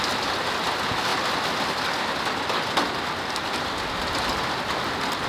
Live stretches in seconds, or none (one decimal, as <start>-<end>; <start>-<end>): 0.0-5.3